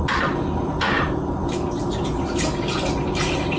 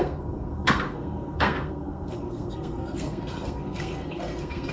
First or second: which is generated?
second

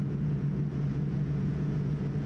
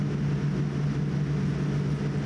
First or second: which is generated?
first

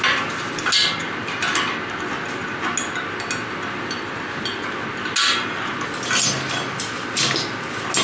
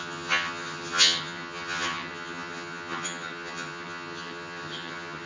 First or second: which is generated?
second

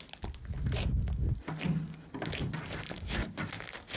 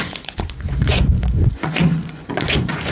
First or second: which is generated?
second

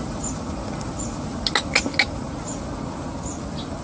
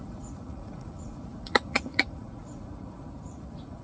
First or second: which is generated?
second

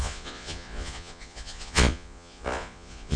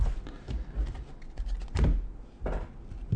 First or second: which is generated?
first